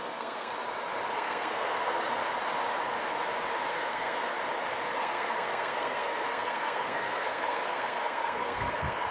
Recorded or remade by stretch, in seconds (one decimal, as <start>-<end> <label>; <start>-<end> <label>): 0.0-0.5 remade; 0.5-1.1 recorded; 1.1-2.1 remade; 2.1-3.7 recorded; 3.7-4.3 remade; 4.3-5.0 recorded; 5.0-9.1 remade